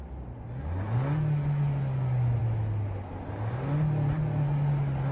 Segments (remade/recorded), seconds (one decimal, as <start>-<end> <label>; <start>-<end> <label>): 0.0-5.1 recorded